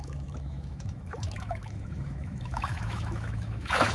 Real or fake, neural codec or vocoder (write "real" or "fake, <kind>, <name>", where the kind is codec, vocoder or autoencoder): fake, autoencoder, DAC-VAE